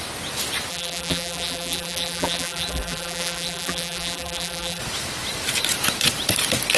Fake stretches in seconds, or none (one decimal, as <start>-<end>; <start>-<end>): 0.7-4.8